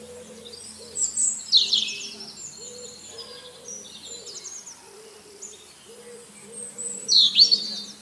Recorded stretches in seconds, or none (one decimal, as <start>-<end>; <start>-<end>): 0.0-6.8; 7.6-8.0